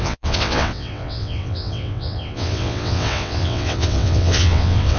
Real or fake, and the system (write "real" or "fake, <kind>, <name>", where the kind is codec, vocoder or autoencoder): fake, vocoder, WaveNeXt